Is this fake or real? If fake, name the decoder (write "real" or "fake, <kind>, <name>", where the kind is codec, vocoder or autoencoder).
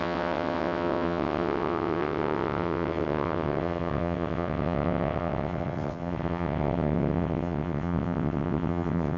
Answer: fake, vocoder, WaveNeXt